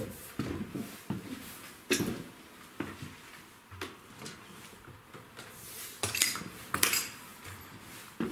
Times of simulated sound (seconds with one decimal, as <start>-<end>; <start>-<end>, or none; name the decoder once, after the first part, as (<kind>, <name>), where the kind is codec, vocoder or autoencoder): none